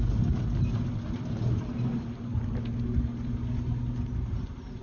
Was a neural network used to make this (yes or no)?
no